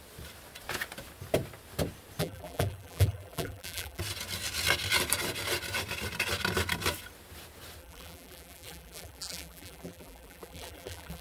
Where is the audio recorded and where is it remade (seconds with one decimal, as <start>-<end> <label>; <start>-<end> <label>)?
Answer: 0.0-2.2 recorded; 2.2-4.0 remade; 4.0-7.8 recorded; 7.8-11.2 remade